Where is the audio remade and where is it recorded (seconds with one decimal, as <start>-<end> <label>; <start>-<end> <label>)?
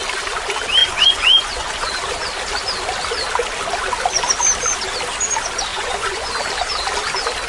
0.0-0.8 recorded; 0.8-2.0 remade; 2.0-5.7 recorded; 5.7-6.3 remade; 6.3-7.5 recorded